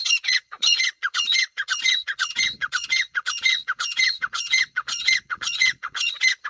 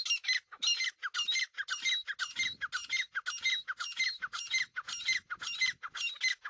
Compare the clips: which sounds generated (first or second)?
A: first